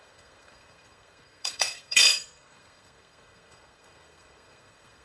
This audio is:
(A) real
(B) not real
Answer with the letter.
B